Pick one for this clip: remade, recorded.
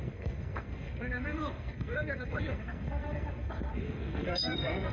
remade